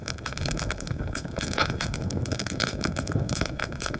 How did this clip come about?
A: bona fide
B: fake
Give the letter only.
B